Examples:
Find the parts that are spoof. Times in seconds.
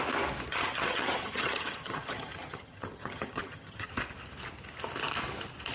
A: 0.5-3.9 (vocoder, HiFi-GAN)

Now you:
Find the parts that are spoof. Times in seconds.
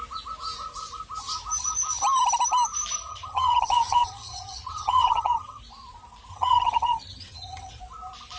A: 3.1-5.6 (vocoder, HiFi-GAN); 6.3-7.8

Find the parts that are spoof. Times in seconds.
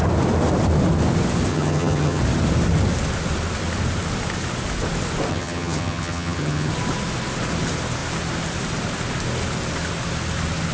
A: 1.5-2.2 (vocoder, HiFi-GAN); 5.3-6.7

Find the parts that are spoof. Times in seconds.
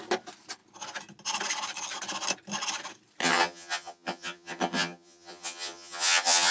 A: 3.2-6.5 (vocoder, HiFi-GAN)